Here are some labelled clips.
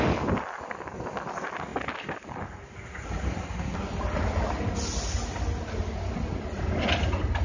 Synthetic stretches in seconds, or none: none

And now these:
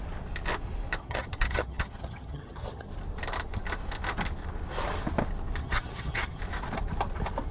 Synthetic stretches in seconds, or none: 1.0-2.9 (vocoder, HiFi-GAN); 5.6-6.4